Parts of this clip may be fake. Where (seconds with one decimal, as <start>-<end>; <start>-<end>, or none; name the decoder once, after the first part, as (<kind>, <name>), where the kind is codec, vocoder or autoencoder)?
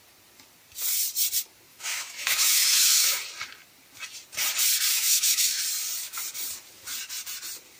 1.7-3.2 (autoencoder, DAC-VAE); 4.9-5.6